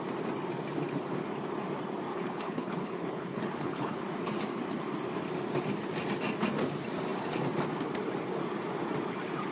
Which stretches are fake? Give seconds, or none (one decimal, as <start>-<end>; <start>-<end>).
2.1-4.0